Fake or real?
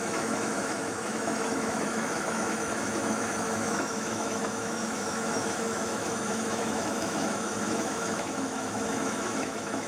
fake